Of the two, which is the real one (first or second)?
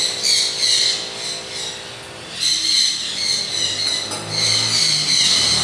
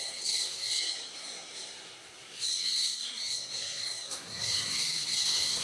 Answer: first